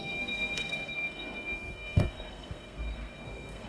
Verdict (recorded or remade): remade